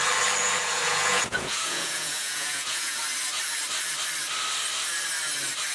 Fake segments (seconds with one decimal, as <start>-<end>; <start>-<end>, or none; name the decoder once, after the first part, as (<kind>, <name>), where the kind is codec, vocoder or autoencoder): 0.4-3.0 (vocoder, Vocos)